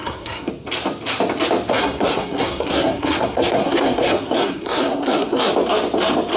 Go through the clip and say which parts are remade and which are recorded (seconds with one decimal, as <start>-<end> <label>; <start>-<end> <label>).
0.0-0.5 remade; 0.5-1.7 recorded; 1.7-5.5 remade; 5.5-6.4 recorded